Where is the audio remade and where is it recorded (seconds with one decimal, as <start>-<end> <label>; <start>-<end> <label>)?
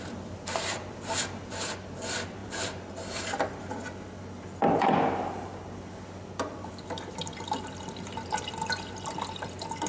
0.0-2.4 recorded; 2.4-3.6 remade; 3.6-9.9 recorded